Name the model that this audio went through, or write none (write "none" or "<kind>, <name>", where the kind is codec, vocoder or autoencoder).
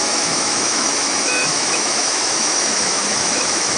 autoencoder, DAC-VAE